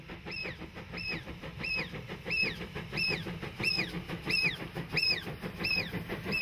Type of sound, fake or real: real